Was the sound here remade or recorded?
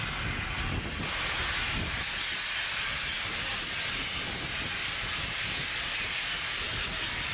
recorded